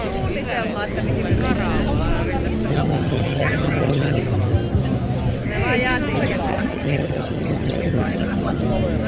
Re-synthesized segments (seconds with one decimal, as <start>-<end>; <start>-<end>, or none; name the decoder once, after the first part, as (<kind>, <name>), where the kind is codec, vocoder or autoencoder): 2.7-4.2 (vocoder, HiFi-GAN); 6.5-8.6